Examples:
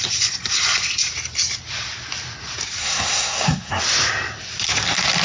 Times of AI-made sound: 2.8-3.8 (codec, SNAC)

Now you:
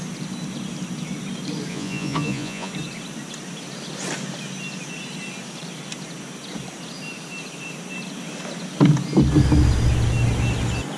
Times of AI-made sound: 1.7-2.7 (vocoder, Vocos)

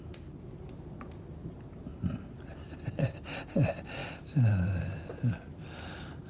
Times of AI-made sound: none

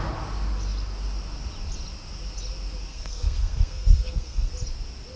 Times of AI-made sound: 2.9-4.5 (codec, SNAC)